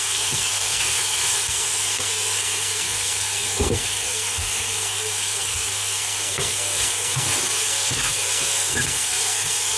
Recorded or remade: remade